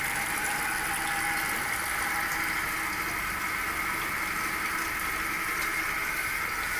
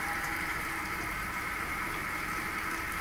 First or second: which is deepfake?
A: second